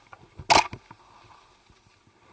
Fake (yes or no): no